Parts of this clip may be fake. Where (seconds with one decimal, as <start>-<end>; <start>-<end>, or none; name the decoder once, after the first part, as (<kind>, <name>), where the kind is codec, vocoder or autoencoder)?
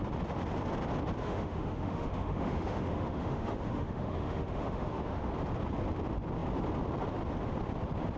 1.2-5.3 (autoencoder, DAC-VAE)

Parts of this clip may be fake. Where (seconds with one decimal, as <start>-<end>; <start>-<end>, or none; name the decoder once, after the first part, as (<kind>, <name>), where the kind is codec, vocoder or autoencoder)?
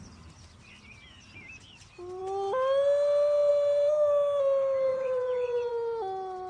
4.9-5.7 (vocoder, Vocos)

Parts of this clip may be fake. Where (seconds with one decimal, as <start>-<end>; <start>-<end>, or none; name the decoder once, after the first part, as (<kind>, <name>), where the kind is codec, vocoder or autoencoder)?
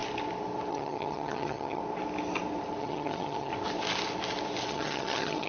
0.7-1.8 (vocoder, HiFi-GAN); 2.8-3.5; 4.7-5.5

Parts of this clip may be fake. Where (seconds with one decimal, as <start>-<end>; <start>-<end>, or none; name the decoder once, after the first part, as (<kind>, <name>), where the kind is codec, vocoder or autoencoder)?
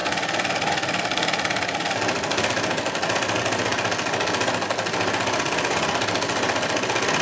none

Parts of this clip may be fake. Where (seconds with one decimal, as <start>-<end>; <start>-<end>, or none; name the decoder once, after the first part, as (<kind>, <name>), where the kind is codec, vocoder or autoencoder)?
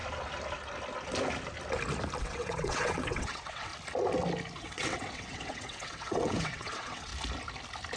2.2-3.7 (vocoder, WaveNeXt); 4.6-7.1